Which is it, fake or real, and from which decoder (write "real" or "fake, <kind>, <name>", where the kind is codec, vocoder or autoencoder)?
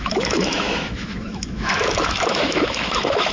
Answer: fake, autoencoder, DAC-VAE